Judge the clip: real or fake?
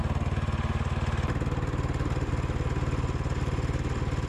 real